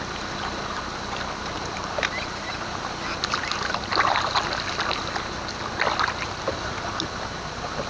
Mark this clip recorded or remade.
recorded